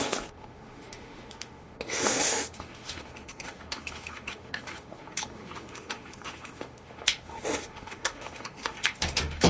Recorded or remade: remade